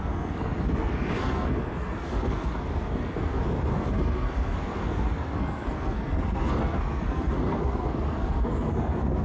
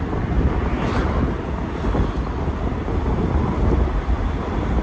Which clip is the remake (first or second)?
first